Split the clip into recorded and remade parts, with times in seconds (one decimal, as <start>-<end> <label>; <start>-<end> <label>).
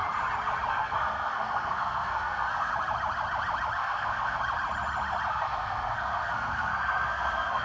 0.0-0.7 recorded; 0.7-2.7 remade; 2.7-3.8 recorded; 3.8-4.4 remade; 4.4-5.3 recorded; 5.3-7.6 remade